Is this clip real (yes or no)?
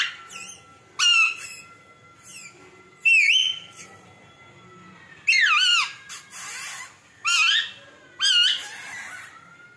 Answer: yes